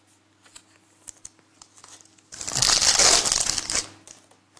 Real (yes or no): yes